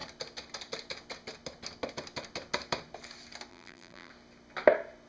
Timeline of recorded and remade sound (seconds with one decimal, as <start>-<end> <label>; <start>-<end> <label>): 0.0-3.5 recorded; 3.5-4.1 remade; 4.1-5.1 recorded